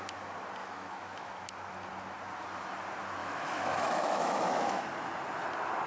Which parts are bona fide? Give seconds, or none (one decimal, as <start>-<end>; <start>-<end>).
0.0-0.6; 1.3-3.2; 4.8-5.9